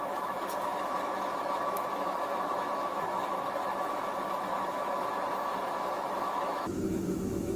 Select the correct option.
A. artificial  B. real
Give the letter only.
A